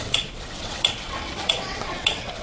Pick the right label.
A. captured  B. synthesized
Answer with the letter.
B